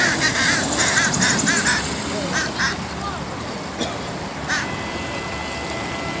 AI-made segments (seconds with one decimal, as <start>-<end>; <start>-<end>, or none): none